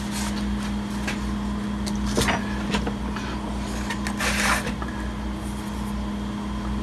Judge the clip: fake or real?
real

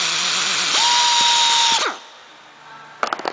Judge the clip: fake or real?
real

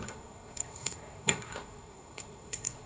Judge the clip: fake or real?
fake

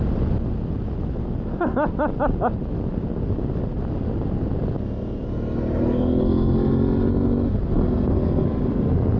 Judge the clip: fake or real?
real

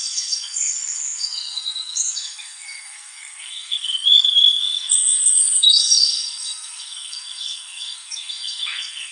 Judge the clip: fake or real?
fake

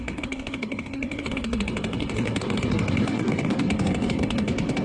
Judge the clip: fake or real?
fake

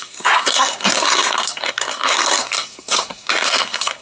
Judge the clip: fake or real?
fake